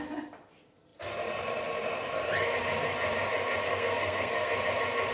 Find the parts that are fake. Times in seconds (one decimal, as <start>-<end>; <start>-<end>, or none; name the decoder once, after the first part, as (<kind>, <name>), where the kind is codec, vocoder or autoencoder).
3.7-4.5 (codec, SNAC)